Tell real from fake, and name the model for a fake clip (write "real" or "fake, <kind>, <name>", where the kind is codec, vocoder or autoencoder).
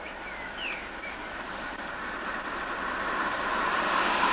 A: real